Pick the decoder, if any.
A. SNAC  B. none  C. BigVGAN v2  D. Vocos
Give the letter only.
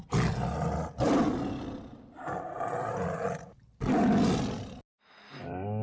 B